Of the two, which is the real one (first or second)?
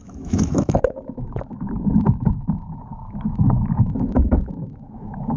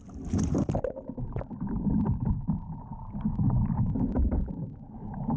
second